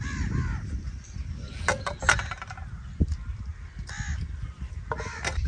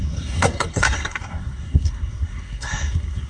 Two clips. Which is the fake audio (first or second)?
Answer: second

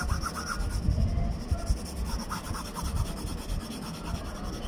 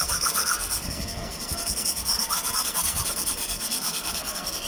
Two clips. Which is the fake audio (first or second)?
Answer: second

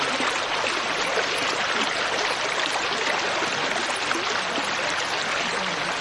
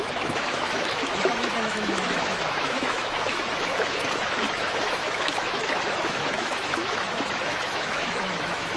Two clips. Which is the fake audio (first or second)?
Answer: second